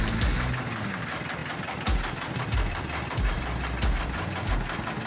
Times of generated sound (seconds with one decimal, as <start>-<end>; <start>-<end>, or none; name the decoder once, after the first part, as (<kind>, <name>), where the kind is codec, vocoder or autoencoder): none